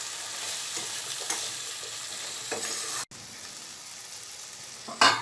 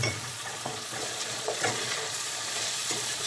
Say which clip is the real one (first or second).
first